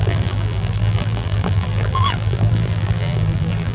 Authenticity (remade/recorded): remade